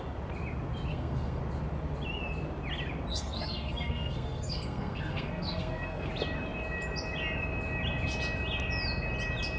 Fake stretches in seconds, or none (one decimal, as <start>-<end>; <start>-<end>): 0.9-1.4; 3.1-6.1